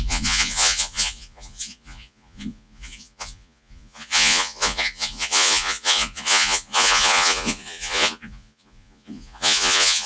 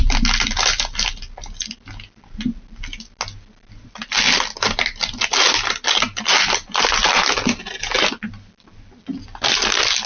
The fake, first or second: first